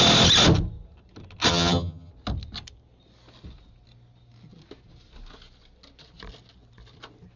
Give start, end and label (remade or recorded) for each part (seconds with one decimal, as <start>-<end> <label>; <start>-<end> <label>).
0.0-1.5 recorded; 1.5-2.1 remade; 2.1-7.4 recorded